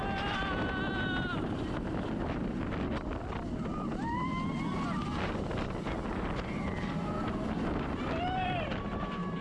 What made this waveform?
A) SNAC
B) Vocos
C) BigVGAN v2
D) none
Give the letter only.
D